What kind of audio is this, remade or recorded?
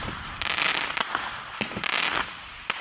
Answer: recorded